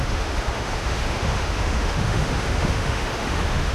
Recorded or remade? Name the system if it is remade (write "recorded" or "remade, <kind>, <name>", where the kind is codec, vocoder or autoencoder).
remade, autoencoder, DAC-VAE